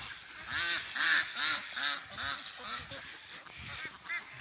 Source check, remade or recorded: recorded